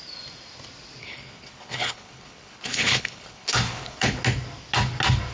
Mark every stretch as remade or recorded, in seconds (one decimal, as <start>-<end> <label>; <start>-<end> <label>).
0.0-1.0 recorded; 1.0-4.2 remade; 4.2-5.3 recorded